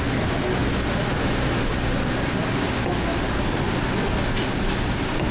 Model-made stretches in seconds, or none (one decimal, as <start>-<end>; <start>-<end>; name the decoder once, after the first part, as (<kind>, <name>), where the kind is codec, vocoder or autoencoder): none